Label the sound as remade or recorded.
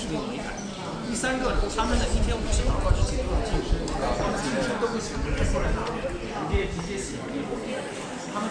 recorded